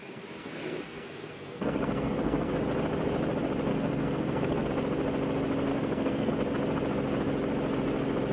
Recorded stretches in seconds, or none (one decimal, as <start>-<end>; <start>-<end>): 2.5-3.7; 4.7-5.7; 6.3-8.3